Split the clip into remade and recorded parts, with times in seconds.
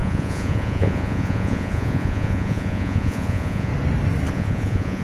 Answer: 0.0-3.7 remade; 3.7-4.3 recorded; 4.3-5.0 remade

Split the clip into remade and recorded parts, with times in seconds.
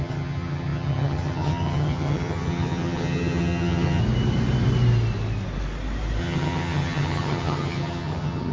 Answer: 0.0-4.0 remade; 4.0-6.2 recorded; 6.2-8.5 remade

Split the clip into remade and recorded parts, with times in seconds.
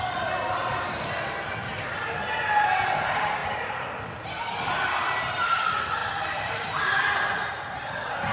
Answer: 0.0-3.4 recorded; 3.4-3.9 remade; 3.9-6.0 recorded; 6.0-7.8 remade; 7.8-8.3 recorded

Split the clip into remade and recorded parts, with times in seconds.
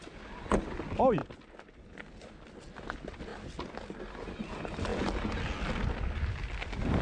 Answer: 0.0-7.0 recorded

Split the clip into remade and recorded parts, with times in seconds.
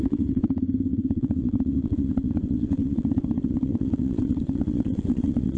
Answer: 0.0-5.6 remade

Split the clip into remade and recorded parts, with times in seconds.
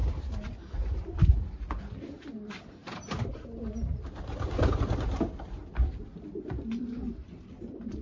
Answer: 0.0-8.0 recorded